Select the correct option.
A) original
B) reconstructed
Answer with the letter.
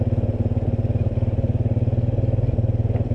A